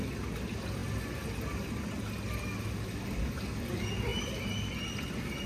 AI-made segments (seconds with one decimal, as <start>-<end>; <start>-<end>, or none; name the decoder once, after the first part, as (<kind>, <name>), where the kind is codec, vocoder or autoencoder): none